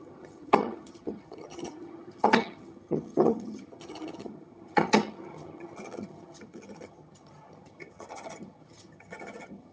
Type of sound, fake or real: fake